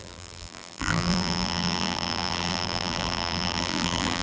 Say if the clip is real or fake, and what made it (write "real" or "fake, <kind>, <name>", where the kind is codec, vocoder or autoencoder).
fake, vocoder, BigVGAN v2